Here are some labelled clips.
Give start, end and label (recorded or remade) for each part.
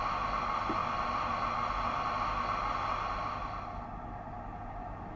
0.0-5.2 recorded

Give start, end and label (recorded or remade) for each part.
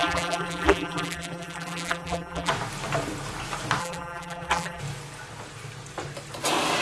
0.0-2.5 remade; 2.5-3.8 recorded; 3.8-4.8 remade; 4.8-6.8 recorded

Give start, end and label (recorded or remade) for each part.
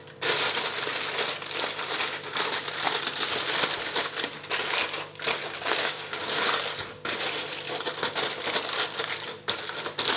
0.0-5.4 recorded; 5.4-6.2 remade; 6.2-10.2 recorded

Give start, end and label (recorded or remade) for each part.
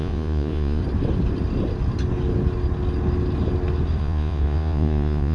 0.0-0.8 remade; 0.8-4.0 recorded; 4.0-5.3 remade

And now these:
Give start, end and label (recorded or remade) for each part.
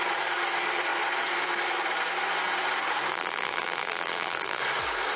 0.0-3.1 recorded; 3.1-4.6 remade; 4.6-5.2 recorded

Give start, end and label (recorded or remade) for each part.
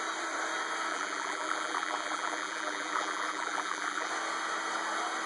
0.0-0.9 recorded; 0.9-4.1 remade; 4.1-5.3 recorded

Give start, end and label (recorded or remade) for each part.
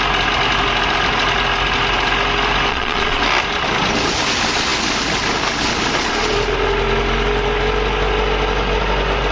0.0-2.7 recorded; 2.7-3.2 remade; 3.2-9.3 recorded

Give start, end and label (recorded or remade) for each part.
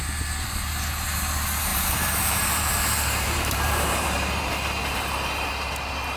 0.0-1.7 recorded; 1.7-4.4 remade; 4.4-6.2 recorded